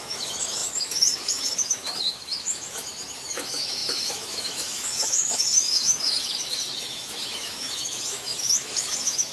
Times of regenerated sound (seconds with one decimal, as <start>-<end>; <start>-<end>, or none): 0.0-9.3